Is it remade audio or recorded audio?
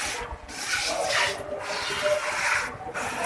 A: recorded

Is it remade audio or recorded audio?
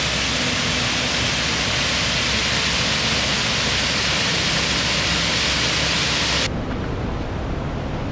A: recorded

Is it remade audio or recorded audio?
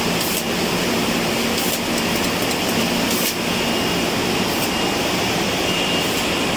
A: recorded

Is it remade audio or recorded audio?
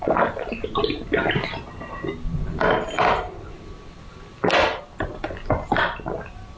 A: recorded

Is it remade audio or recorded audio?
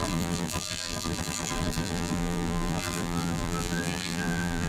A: remade